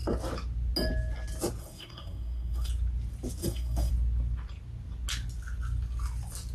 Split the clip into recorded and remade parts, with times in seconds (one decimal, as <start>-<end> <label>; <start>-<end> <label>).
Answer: 0.0-1.6 recorded; 1.6-2.7 remade; 2.7-3.4 recorded; 3.4-3.9 remade; 3.9-6.5 recorded